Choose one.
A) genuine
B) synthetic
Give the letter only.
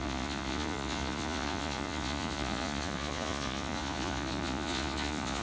B